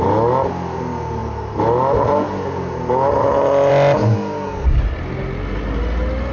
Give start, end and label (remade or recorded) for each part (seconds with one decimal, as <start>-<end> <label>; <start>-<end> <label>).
0.0-6.3 recorded